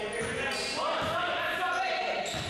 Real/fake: real